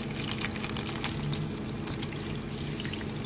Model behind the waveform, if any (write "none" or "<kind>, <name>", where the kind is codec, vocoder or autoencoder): none